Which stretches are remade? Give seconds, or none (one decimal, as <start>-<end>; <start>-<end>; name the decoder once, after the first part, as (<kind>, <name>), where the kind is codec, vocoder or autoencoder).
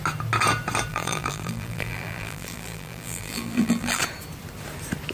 0.9-4.0 (vocoder, BigVGAN v2)